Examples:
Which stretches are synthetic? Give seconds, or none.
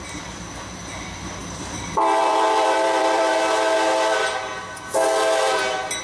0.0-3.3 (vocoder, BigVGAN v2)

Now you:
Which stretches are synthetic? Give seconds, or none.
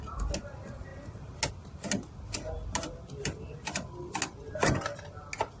none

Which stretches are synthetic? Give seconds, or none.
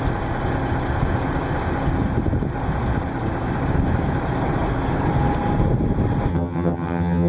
6.3-7.3 (vocoder, HiFi-GAN)